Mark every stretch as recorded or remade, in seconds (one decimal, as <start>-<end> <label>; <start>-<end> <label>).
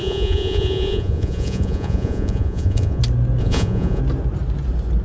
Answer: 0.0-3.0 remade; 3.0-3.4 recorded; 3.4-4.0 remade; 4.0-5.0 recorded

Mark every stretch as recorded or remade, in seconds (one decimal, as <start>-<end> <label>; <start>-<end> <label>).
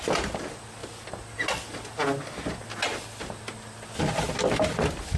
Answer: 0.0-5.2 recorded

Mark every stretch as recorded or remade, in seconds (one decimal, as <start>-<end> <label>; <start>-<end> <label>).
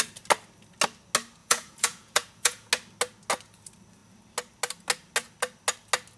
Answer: 0.0-1.4 recorded; 1.4-2.7 remade; 2.7-6.2 recorded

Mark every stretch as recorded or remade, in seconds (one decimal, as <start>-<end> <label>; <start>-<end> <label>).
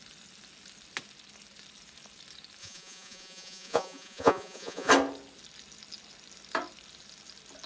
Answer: 0.0-2.6 recorded; 2.6-4.9 remade; 4.9-7.7 recorded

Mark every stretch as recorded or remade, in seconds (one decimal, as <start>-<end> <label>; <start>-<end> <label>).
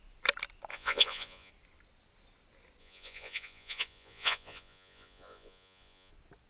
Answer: 0.0-0.7 recorded; 0.7-1.5 remade; 1.5-2.8 recorded; 2.8-6.1 remade; 6.1-6.5 recorded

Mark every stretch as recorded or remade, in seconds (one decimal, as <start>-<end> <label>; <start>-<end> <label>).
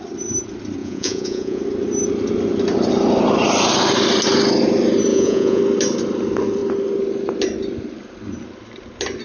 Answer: 0.0-0.8 recorded; 0.8-1.6 remade; 1.6-5.1 recorded; 5.1-5.6 remade; 5.6-9.2 recorded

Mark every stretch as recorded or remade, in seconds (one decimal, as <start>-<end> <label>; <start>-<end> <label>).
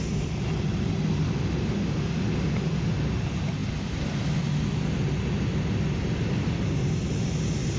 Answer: 0.0-7.8 recorded